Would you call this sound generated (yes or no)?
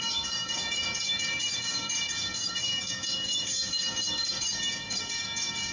yes